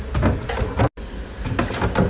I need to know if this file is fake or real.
real